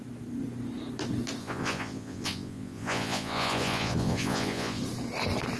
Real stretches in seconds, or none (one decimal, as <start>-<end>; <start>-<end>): 0.0-1.4; 4.8-5.6